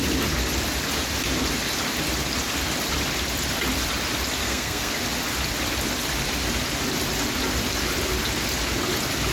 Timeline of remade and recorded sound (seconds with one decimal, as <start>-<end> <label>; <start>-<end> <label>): 0.0-4.4 recorded; 4.4-4.9 remade; 4.9-9.3 recorded